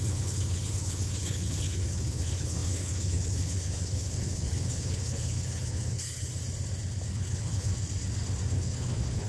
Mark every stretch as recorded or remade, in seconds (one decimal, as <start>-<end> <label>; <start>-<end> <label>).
0.0-6.3 remade; 6.3-7.1 recorded; 7.1-7.7 remade; 7.7-8.5 recorded; 8.5-9.3 remade